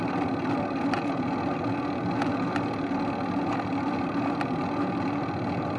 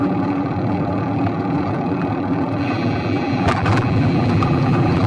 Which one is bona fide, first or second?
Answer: first